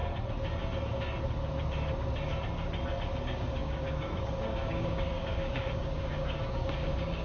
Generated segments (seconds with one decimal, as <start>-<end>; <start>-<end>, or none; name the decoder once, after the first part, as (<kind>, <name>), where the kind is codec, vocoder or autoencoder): 3.2-7.2 (codec, DAC)